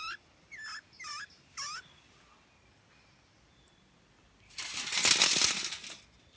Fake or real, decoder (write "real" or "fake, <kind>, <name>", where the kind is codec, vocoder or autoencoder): real